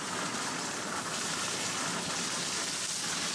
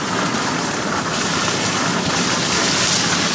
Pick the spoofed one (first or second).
second